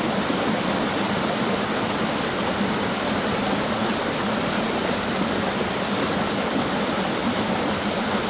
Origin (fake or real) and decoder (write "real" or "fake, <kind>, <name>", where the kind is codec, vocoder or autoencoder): real